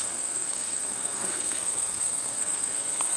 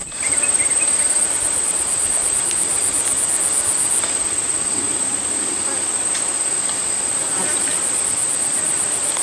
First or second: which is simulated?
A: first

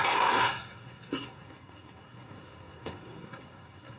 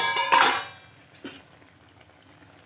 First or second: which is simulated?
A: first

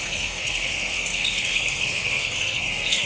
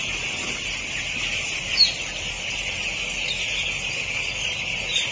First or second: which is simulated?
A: first